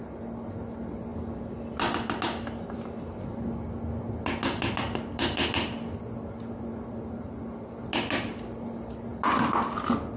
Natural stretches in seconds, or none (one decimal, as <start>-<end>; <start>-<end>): 0.0-10.2